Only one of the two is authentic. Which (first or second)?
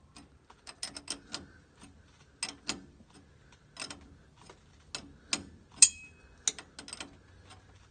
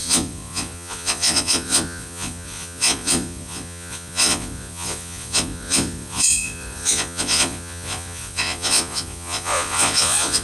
first